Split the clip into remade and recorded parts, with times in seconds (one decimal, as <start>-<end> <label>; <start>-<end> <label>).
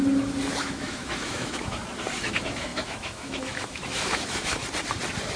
0.0-0.6 recorded; 0.6-1.8 remade; 1.8-2.3 recorded; 2.3-4.6 remade; 4.6-5.4 recorded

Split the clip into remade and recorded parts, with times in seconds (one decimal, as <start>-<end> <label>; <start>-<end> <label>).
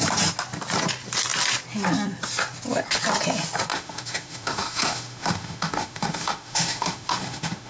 0.0-3.7 recorded; 3.7-7.7 remade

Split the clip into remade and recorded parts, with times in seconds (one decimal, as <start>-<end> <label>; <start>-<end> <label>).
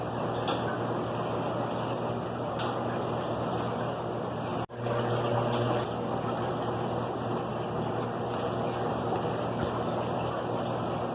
0.0-11.1 recorded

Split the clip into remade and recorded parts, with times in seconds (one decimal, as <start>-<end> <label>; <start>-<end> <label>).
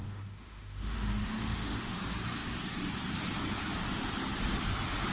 0.0-2.0 remade; 2.0-5.1 recorded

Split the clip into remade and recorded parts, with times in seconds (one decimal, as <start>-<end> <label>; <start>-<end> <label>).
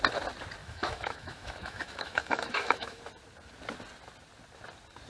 0.0-0.6 recorded; 0.6-3.0 remade; 3.0-5.1 recorded